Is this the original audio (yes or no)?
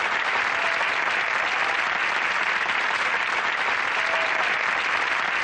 yes